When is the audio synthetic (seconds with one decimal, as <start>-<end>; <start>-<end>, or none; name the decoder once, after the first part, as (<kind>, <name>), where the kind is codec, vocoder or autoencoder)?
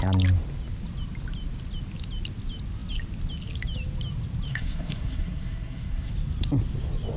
4.5-6.1 (codec, SNAC)